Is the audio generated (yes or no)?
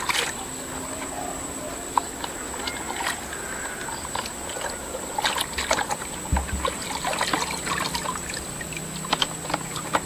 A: no